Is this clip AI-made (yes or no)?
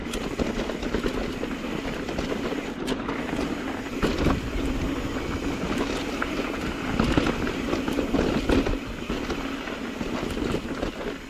no